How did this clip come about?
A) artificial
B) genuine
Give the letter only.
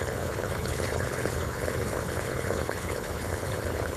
A